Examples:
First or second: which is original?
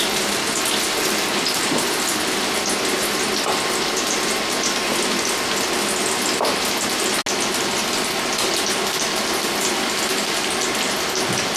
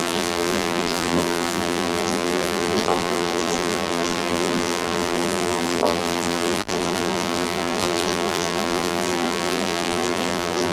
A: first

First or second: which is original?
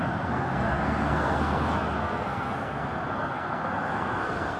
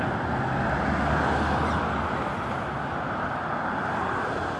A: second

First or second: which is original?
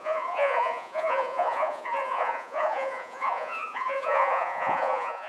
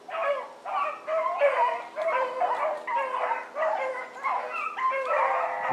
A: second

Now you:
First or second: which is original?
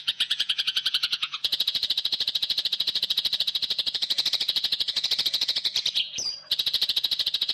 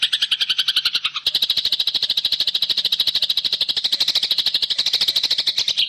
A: second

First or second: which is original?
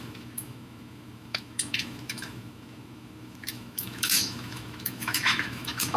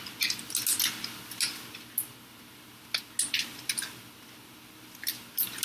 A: second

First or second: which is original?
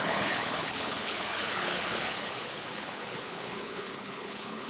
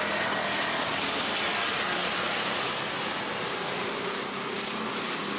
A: second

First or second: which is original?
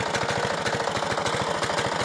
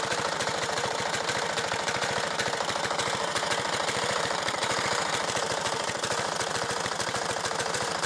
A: first